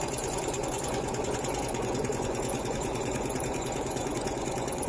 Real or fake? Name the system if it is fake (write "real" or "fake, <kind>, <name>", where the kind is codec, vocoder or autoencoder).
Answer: fake, vocoder, Vocos